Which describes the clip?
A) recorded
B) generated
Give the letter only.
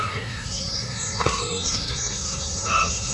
B